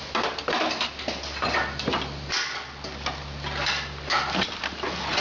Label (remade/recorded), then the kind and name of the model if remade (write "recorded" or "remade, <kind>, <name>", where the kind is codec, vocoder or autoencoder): recorded